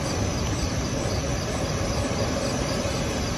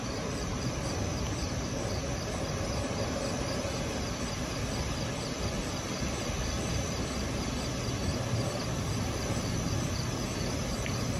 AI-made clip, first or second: first